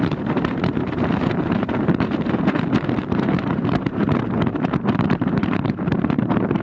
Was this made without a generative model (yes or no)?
no